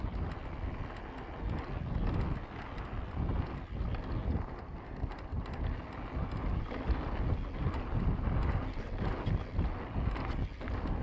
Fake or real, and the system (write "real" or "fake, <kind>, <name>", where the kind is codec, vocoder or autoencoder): real